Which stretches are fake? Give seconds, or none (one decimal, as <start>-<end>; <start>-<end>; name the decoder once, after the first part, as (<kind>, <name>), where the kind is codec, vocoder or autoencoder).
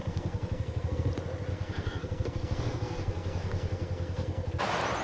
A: 0.0-1.1 (codec, SNAC); 1.5-4.5